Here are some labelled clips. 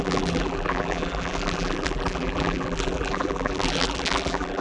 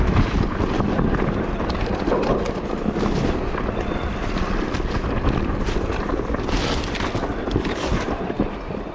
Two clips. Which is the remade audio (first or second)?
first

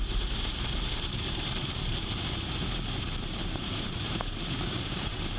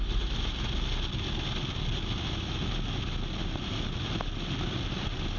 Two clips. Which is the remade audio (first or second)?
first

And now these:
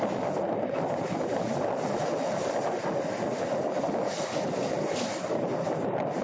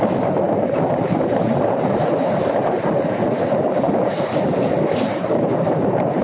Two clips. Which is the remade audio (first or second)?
second